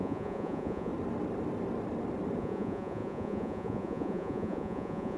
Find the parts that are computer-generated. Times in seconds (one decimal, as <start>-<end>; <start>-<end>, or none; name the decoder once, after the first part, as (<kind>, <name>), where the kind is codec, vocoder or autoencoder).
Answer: 0.0-0.9 (vocoder, Vocos); 2.4-5.2